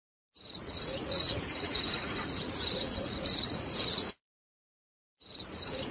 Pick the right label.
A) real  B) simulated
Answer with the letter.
B